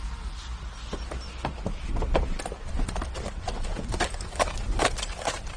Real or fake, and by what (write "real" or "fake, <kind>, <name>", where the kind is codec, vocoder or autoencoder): real